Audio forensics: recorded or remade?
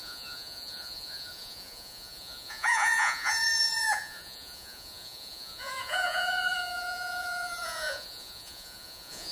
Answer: remade